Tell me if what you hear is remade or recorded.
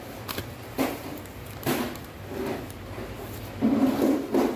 recorded